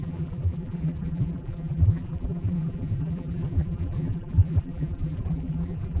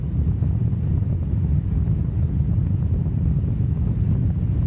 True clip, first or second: second